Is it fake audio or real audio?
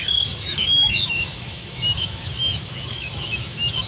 fake